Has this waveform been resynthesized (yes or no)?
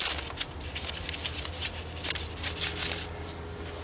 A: no